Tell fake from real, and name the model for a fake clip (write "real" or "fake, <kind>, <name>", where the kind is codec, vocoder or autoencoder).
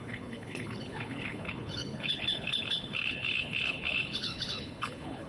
fake, codec, HILCodec